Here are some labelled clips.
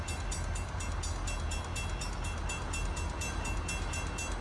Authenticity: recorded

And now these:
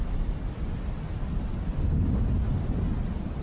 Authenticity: recorded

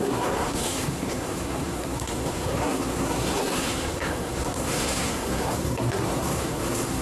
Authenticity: remade